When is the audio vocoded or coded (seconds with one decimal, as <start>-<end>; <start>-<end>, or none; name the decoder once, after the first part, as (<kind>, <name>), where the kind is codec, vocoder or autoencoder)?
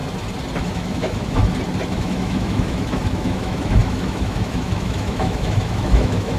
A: 0.6-1.4 (autoencoder, DAC-VAE); 1.9-6.4